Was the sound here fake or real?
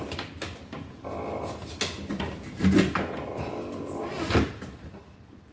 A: real